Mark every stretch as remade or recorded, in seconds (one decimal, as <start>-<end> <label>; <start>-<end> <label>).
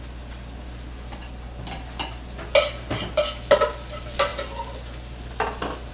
0.0-5.9 recorded